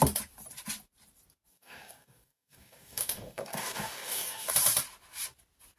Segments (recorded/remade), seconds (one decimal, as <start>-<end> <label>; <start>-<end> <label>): 0.0-1.5 recorded; 1.5-4.5 remade; 4.5-5.8 recorded